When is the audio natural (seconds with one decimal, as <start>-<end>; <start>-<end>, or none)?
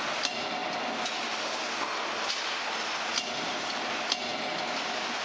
0.0-5.2